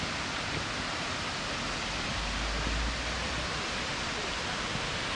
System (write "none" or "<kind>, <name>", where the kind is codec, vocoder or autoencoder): none